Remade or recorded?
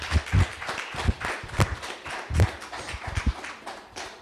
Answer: recorded